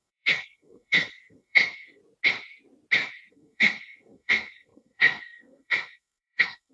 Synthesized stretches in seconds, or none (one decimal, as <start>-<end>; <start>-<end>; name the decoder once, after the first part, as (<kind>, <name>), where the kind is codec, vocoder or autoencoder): 0.0-2.0 (codec, SNAC); 3.3-6.7